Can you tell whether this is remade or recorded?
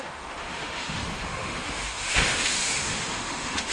remade